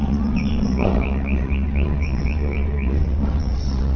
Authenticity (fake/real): fake